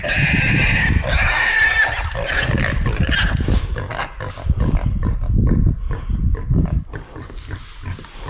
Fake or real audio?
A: real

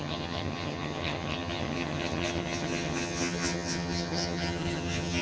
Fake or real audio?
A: fake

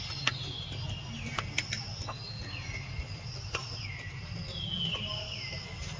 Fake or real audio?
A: real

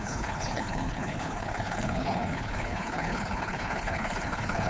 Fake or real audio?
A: fake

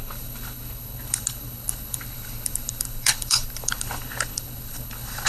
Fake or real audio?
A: fake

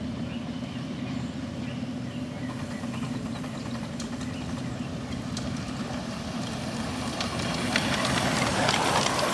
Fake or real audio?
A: real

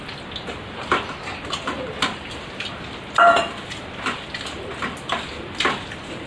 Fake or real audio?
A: real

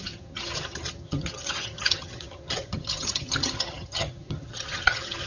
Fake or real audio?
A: fake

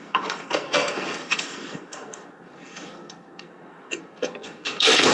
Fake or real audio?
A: fake